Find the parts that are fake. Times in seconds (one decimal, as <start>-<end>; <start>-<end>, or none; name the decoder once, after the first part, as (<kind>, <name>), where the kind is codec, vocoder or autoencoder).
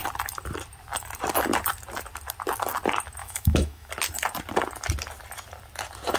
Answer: 3.2-3.9 (autoencoder, DAC-VAE)